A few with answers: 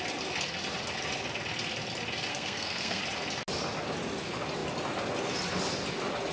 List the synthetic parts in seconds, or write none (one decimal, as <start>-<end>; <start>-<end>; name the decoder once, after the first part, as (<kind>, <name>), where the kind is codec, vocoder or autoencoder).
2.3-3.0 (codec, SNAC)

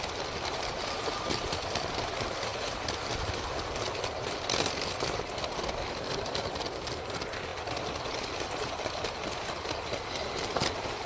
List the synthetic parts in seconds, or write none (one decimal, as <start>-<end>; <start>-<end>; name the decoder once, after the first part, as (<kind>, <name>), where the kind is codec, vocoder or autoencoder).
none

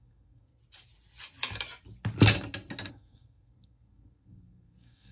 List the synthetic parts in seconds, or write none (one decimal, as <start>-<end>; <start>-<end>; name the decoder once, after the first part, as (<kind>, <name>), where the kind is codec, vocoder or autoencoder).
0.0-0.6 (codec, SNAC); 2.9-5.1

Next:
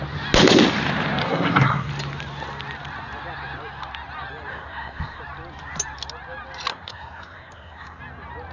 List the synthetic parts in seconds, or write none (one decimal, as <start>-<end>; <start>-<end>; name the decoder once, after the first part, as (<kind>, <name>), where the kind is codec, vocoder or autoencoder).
1.2-1.9 (codec, SNAC); 4.5-5.2; 6.7-8.0

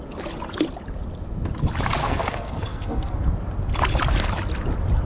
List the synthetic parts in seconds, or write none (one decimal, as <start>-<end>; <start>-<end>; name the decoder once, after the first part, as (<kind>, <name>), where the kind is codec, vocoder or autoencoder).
2.0-3.3 (codec, SNAC)